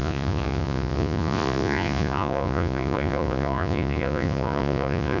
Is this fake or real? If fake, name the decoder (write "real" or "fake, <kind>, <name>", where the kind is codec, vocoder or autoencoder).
fake, vocoder, Vocos